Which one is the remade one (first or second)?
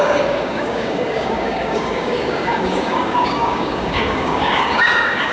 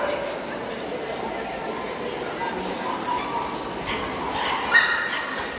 first